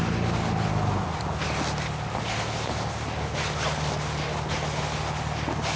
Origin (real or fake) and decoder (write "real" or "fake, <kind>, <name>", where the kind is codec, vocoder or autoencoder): real